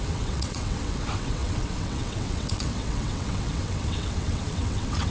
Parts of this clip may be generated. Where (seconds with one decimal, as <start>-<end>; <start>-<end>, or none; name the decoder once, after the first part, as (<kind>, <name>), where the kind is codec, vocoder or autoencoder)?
0.0-5.1 (vocoder, WaveNeXt)